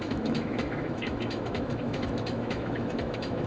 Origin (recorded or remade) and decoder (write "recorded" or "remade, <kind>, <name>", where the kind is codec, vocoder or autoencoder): remade, autoencoder, DAC-VAE